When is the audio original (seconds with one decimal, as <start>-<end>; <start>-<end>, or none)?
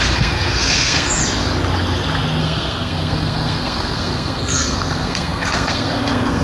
1.2-2.4